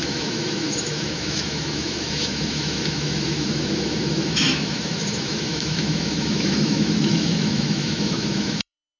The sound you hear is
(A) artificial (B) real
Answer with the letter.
A